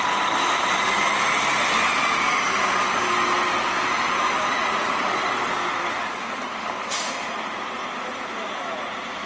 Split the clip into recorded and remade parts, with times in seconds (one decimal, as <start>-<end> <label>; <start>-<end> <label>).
0.0-4.6 recorded; 4.6-5.2 remade; 5.2-9.3 recorded